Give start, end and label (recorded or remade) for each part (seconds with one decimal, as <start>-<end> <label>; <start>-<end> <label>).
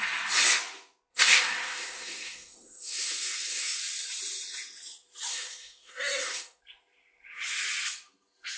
0.0-1.1 recorded; 1.1-3.8 remade; 3.8-5.3 recorded; 5.3-6.6 remade; 6.6-8.6 recorded